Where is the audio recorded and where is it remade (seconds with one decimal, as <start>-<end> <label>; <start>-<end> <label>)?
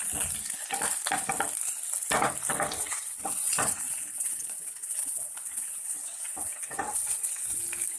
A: 0.0-2.8 recorded; 2.8-7.6 remade; 7.6-8.0 recorded